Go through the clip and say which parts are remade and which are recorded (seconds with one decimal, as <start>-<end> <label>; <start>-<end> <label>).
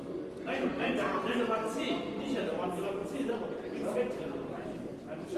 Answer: 0.0-5.4 remade